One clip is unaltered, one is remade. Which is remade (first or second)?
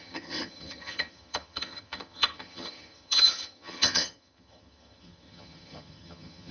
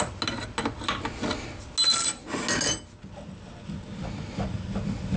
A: first